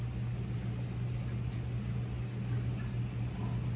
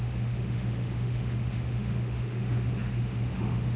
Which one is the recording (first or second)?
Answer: first